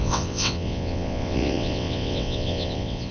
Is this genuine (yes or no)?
no